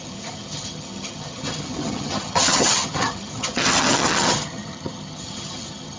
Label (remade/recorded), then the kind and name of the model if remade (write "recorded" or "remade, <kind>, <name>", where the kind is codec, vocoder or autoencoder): remade, vocoder, HiFi-GAN